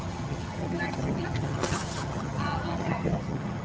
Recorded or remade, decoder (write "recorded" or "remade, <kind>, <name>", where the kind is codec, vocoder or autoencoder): remade, vocoder, HiFi-GAN